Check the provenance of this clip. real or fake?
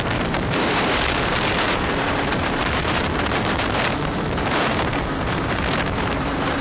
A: fake